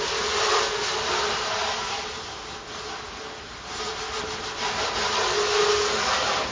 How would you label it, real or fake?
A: real